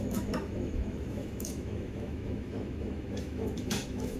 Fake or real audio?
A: fake